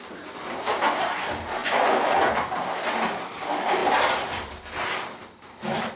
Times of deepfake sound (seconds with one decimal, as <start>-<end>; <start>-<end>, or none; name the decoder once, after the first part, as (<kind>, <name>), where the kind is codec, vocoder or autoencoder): 1.6-2.3 (vocoder, Vocos)